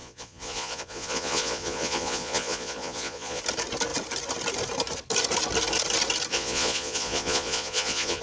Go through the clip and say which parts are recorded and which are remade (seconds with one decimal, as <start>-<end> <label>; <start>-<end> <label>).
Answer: 0.0-3.4 remade; 3.4-6.3 recorded; 6.3-8.2 remade